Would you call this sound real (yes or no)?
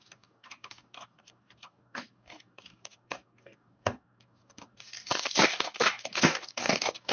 no